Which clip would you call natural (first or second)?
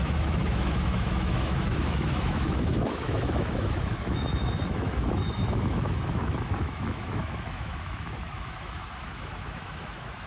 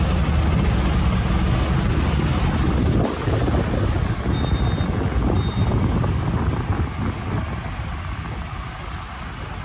second